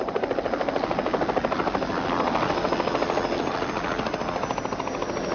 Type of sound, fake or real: real